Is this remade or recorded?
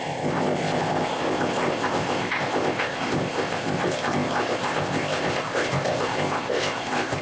remade